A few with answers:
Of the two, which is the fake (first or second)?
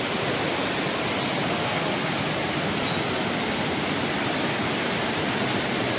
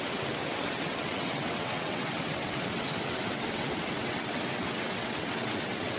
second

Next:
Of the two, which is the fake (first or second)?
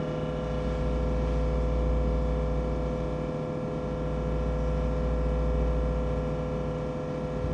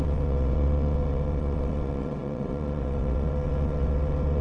second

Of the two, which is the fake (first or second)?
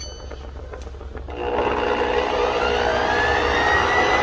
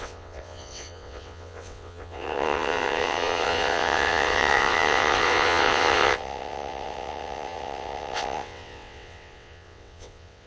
second